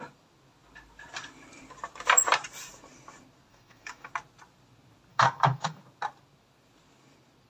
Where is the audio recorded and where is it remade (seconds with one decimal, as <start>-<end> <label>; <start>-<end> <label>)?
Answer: 0.0-3.5 recorded; 3.5-4.1 remade; 4.1-5.1 recorded; 5.1-5.8 remade; 5.8-7.5 recorded